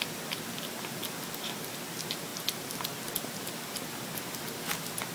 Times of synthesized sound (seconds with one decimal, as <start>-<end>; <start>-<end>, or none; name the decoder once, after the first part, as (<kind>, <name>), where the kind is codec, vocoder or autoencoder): none